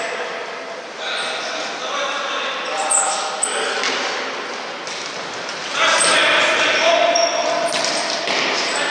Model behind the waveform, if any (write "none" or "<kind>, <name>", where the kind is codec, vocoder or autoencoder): none